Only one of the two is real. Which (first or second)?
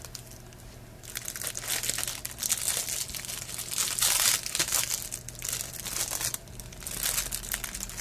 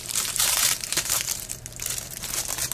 first